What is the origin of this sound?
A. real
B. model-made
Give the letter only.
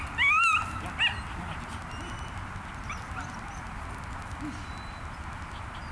A